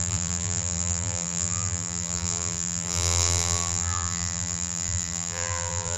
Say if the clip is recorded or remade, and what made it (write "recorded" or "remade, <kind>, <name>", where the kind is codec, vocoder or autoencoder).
remade, vocoder, BigVGAN v2